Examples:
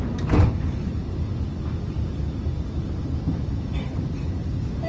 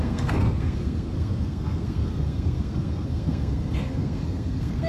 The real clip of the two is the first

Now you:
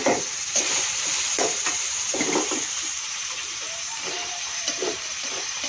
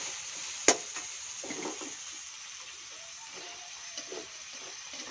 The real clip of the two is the second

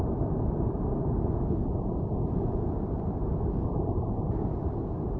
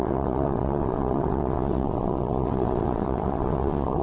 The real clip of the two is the first